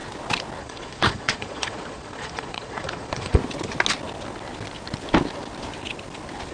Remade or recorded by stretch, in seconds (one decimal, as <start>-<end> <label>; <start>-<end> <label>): 0.0-0.6 recorded; 0.6-3.4 remade; 3.4-6.5 recorded